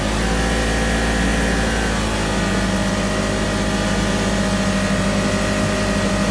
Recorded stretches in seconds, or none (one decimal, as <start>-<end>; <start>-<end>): 0.0-6.3